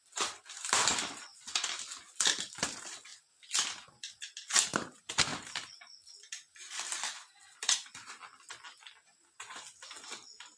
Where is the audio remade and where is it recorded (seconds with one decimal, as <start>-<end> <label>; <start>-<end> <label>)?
0.0-10.6 recorded